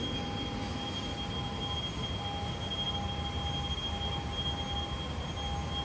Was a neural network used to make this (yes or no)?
no